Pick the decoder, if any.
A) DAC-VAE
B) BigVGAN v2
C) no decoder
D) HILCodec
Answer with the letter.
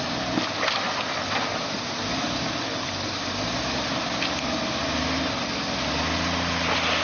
C